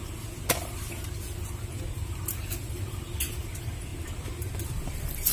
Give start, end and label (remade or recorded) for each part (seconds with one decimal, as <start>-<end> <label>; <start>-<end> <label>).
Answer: 0.0-5.3 recorded